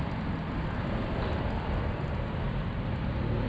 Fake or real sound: real